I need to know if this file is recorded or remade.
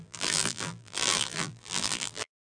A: remade